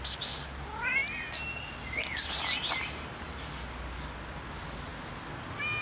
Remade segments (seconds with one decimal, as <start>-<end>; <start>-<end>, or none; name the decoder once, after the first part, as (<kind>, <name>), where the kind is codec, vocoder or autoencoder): none